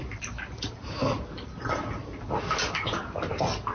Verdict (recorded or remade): recorded